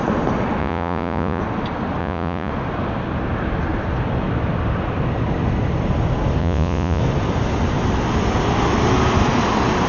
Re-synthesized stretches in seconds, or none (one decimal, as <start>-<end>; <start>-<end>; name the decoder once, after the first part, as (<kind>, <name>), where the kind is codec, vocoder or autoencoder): 0.6-1.4 (vocoder, Vocos); 2.0-2.5; 6.4-7.0